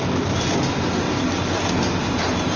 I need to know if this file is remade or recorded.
recorded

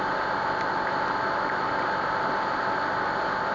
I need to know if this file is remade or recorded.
recorded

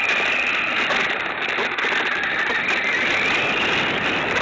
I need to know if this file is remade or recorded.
recorded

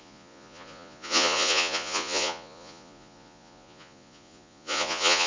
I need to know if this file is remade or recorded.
remade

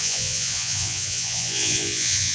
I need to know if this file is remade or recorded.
remade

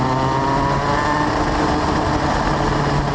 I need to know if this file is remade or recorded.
recorded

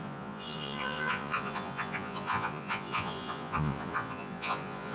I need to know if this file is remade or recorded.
remade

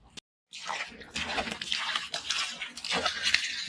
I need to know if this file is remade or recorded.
recorded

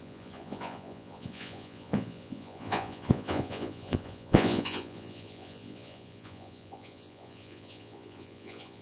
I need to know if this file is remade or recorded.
remade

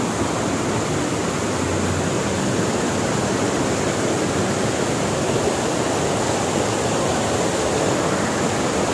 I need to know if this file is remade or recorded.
recorded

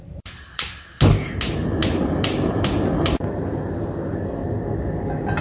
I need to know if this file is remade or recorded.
recorded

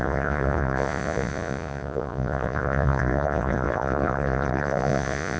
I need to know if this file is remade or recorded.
remade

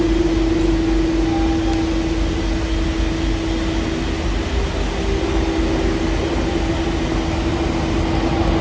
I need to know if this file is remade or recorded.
recorded